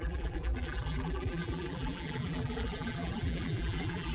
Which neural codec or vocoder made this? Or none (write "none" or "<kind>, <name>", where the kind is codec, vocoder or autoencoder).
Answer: vocoder, BigVGAN v2